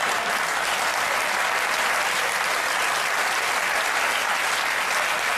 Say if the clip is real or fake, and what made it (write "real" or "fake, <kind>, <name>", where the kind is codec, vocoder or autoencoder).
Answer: real